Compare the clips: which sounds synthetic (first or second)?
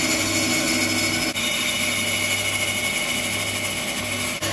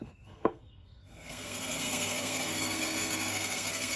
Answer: second